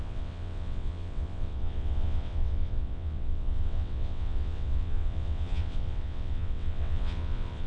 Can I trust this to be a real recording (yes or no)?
no